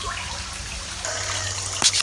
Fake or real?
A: real